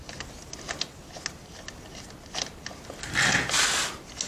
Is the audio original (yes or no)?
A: yes